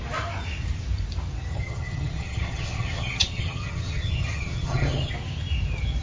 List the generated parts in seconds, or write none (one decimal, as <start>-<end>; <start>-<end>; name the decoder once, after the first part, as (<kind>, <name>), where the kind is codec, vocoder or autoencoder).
1.5-5.1 (vocoder, HiFi-GAN)